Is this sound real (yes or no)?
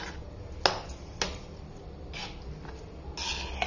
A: yes